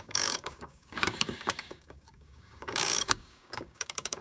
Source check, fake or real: fake